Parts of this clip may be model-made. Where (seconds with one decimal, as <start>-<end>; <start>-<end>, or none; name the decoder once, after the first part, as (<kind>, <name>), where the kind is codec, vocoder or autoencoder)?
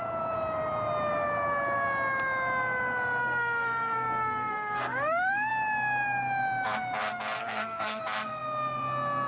3.2-5.5 (codec, SNAC); 7.4-8.0